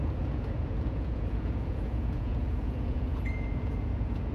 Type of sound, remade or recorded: remade